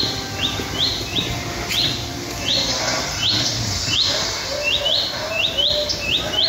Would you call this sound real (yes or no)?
yes